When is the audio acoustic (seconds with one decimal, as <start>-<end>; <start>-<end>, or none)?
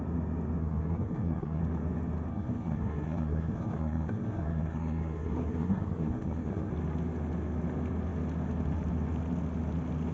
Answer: 0.0-0.6; 1.6-2.3; 6.7-10.1